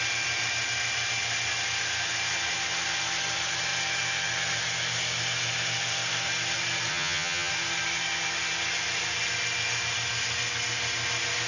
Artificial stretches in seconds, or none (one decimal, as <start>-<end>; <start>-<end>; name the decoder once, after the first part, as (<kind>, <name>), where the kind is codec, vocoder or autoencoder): 6.9-7.5 (vocoder, HiFi-GAN)